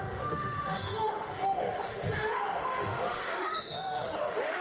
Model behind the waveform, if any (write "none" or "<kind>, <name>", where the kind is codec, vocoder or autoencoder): autoencoder, DAC-VAE